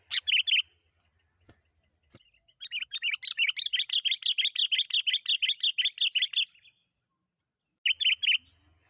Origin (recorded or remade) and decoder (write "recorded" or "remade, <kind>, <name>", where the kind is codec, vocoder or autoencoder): recorded